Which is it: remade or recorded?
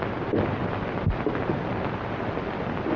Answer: recorded